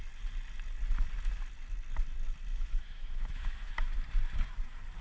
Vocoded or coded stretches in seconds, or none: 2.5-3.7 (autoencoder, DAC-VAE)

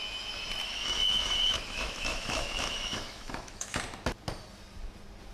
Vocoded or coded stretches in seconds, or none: 0.6-3.8 (autoencoder, DAC-VAE)

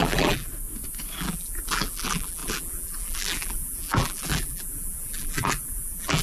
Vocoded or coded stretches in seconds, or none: 0.0-0.5 (vocoder, BigVGAN v2); 1.2-6.2

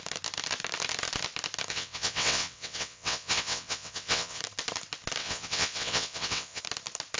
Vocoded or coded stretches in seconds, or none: 1.7-4.4 (vocoder, WaveNeXt); 5.2-6.6

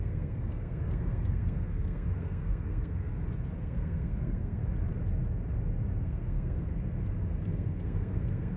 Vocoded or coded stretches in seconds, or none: 0.0-3.1 (codec, SNAC); 3.6-4.6; 6.0-6.7; 7.4-8.6

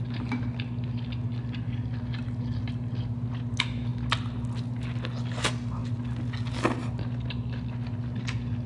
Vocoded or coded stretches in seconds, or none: none

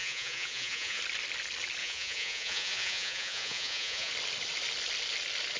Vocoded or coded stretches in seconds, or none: 0.0-1.0 (vocoder, Vocos); 1.8-4.1